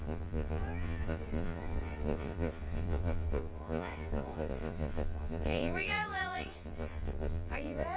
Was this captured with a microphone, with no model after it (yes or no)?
no